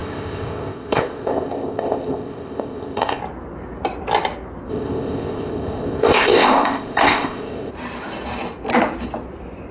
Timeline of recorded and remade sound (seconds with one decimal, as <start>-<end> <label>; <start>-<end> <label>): 0.0-3.2 remade; 3.2-4.7 recorded; 4.7-7.7 remade; 7.7-9.7 recorded